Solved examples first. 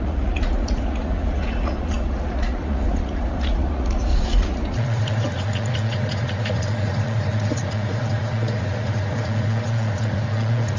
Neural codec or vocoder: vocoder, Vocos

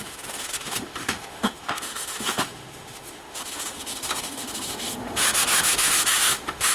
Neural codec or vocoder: autoencoder, DAC-VAE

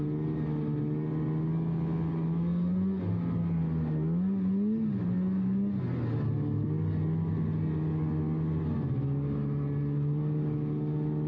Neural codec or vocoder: none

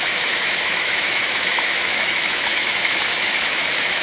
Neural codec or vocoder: autoencoder, DAC-VAE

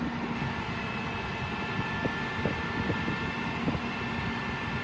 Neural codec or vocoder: none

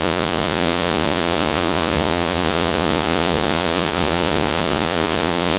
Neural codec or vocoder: vocoder, Vocos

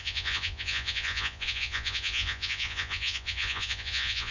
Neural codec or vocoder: vocoder, Vocos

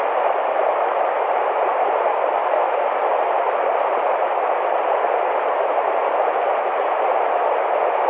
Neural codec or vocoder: none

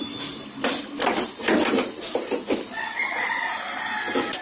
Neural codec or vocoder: none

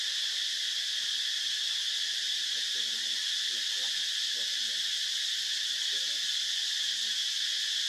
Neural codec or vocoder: none